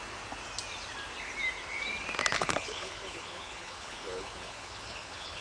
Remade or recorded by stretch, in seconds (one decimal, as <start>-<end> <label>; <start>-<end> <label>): 0.0-2.3 recorded; 2.3-5.4 remade

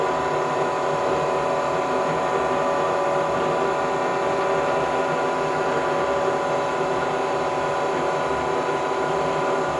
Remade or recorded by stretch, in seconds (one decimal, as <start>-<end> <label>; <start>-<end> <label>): 0.0-9.8 recorded